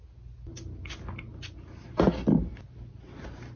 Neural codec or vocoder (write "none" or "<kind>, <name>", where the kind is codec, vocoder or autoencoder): none